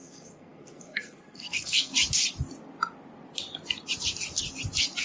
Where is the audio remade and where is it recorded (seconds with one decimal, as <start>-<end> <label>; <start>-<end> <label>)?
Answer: 0.0-1.9 remade; 1.9-5.0 recorded